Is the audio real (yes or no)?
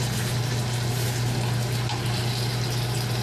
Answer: yes